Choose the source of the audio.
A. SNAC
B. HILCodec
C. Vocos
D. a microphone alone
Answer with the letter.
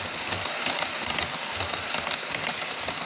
D